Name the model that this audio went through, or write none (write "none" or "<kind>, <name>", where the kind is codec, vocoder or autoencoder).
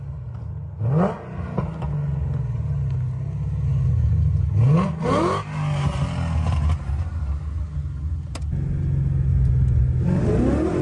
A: none